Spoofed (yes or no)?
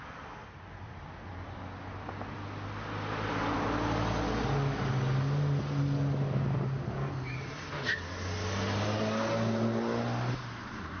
no